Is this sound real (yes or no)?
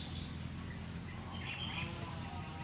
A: yes